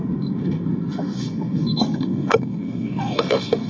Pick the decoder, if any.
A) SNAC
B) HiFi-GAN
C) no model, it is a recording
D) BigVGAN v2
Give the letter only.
A